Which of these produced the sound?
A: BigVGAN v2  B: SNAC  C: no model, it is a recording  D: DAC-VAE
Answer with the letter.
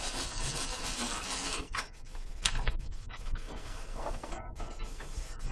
B